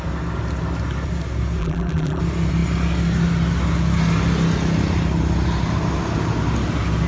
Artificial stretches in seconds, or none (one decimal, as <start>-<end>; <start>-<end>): 1.6-2.2